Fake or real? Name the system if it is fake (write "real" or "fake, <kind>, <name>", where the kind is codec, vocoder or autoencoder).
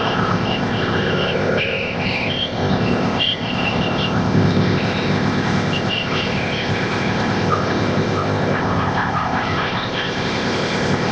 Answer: fake, codec, ZipCodec